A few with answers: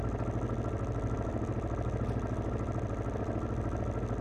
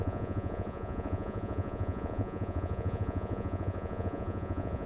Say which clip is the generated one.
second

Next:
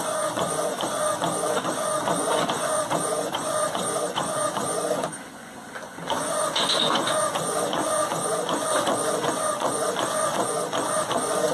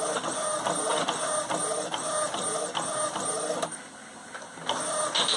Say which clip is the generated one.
first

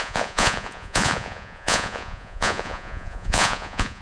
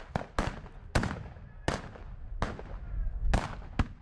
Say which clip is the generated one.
first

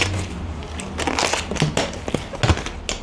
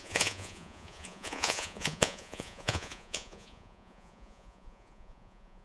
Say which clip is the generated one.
second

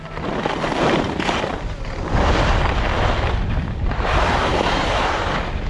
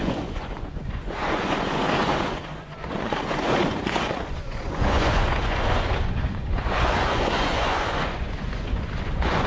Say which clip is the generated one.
second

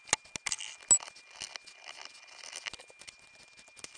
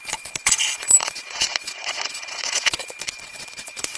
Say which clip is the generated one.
second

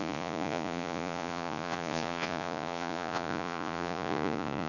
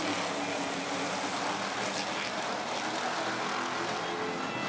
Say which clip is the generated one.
first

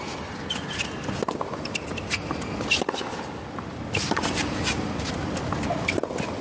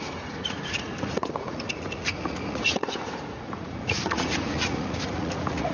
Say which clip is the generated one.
second